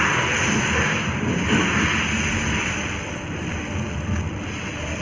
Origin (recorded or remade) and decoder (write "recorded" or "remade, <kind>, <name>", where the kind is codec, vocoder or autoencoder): recorded